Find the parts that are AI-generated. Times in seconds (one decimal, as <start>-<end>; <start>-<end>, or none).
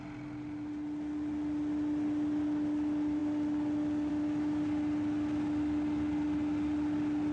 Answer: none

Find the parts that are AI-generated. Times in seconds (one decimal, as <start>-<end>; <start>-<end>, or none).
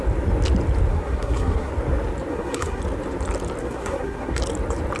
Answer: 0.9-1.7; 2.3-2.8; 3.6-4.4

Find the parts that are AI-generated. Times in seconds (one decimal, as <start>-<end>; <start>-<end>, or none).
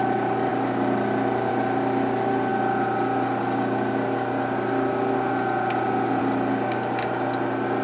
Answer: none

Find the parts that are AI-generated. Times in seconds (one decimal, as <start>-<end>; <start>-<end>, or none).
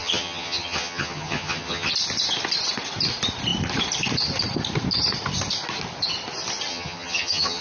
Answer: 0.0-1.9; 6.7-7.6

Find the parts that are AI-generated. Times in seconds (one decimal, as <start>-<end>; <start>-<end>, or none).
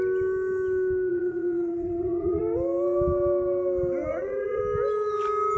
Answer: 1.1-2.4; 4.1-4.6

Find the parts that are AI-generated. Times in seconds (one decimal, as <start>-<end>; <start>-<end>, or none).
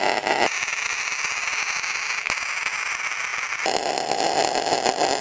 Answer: 0.0-1.5; 2.9-5.2